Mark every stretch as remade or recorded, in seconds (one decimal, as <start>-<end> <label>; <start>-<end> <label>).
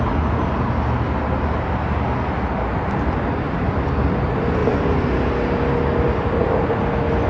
0.0-7.3 recorded